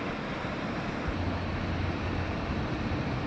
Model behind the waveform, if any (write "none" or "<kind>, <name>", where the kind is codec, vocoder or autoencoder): none